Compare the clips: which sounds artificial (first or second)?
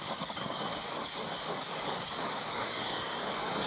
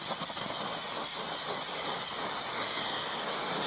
first